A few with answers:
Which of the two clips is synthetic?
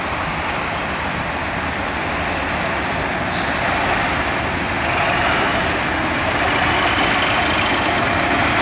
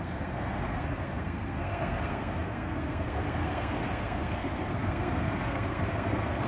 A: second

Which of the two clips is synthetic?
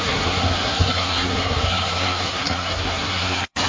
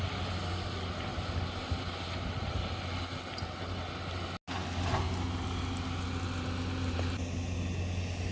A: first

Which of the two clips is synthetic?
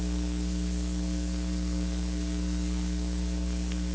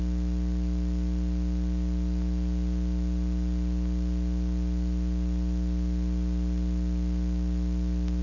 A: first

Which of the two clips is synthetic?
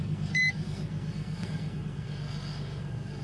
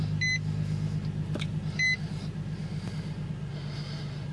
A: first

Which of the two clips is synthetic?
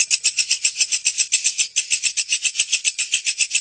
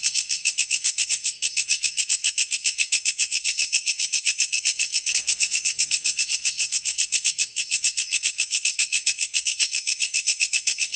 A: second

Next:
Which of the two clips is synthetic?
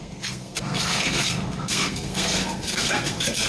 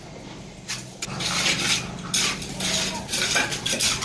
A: first